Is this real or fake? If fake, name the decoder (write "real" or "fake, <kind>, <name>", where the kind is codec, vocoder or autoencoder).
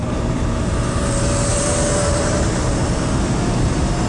fake, vocoder, BigVGAN v2